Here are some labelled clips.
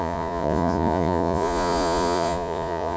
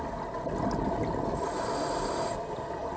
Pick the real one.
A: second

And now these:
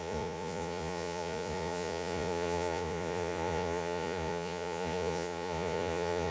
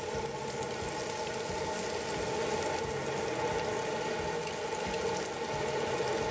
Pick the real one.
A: second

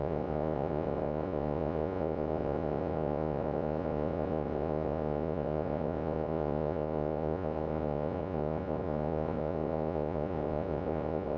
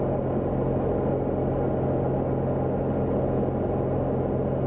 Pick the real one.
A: second